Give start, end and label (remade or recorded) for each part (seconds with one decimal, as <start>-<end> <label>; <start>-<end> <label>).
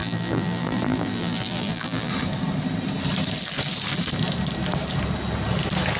0.0-2.1 remade; 2.1-6.0 recorded